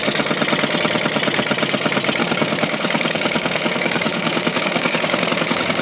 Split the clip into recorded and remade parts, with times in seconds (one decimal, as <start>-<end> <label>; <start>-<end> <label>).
0.0-2.2 recorded; 2.2-5.8 remade